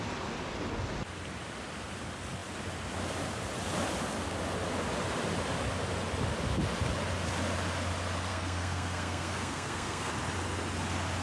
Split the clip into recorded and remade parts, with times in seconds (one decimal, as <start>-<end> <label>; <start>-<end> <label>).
0.0-8.3 recorded; 8.3-10.1 remade; 10.1-11.2 recorded